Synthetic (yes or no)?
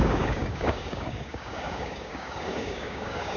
yes